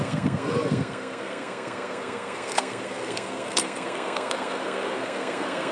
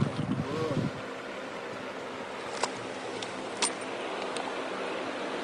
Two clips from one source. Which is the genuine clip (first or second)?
second